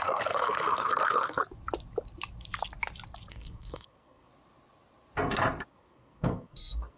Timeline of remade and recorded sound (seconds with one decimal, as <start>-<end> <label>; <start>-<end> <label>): 0.0-1.4 remade; 1.4-3.3 recorded; 3.3-4.3 remade; 4.3-5.7 recorded; 5.7-7.0 remade